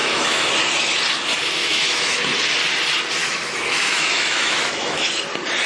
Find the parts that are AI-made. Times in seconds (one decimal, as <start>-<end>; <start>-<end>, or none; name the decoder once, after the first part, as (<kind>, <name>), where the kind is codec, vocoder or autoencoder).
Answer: 0.0-0.5 (autoencoder, DAC-VAE); 1.6-2.2; 3.2-5.1